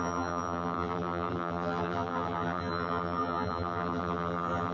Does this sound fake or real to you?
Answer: fake